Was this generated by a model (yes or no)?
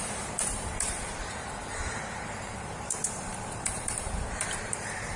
yes